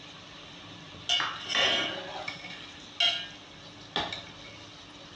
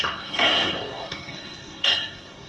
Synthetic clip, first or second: second